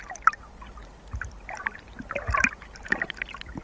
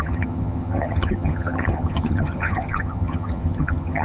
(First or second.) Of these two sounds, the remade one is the second